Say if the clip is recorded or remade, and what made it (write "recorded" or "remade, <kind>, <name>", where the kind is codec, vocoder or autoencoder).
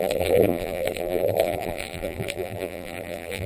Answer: remade, vocoder, BigVGAN v2